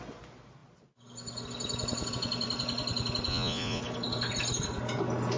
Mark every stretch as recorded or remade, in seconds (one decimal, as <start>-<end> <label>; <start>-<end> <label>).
0.0-3.3 recorded; 3.3-3.8 remade; 3.8-5.4 recorded